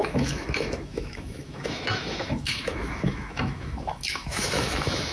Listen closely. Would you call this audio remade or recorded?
remade